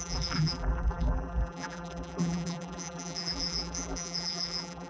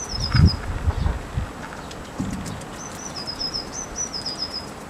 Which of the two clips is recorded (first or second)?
second